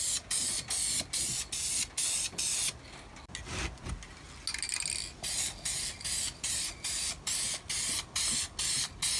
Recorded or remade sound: recorded